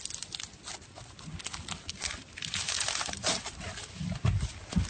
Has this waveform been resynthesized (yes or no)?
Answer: no